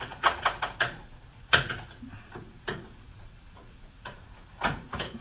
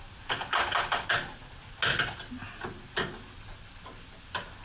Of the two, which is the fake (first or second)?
first